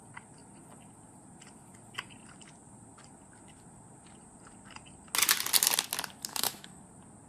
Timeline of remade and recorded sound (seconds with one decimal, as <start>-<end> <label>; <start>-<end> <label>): 0.0-6.3 recorded; 6.3-6.8 remade; 6.8-7.3 recorded